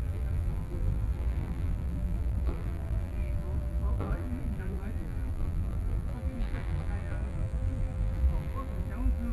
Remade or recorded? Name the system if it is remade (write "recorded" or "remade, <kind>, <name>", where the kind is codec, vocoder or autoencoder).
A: remade, vocoder, BigVGAN v2